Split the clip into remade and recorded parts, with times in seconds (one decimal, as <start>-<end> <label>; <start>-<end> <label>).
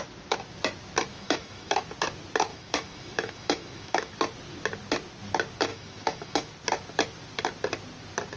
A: 0.0-1.1 recorded; 1.1-1.8 remade; 1.8-2.5 recorded; 2.5-4.1 remade; 4.1-5.7 recorded; 5.7-6.5 remade; 6.5-8.4 recorded